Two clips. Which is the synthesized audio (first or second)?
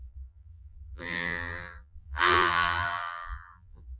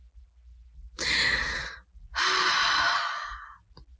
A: first